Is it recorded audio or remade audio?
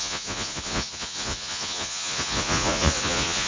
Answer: remade